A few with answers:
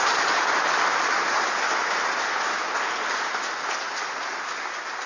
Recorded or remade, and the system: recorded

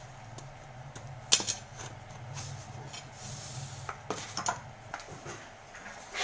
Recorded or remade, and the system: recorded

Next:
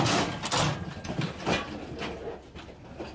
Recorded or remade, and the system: recorded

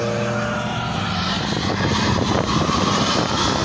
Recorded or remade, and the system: recorded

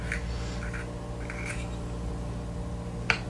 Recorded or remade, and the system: recorded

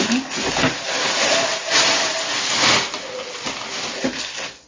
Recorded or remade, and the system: recorded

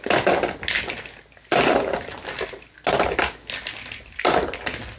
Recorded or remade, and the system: recorded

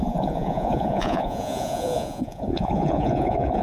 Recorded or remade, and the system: remade, vocoder, Vocos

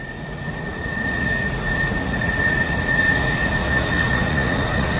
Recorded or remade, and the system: remade, vocoder, Vocos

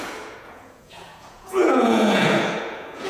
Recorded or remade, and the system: remade, vocoder, Vocos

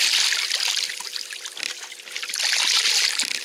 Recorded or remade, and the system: recorded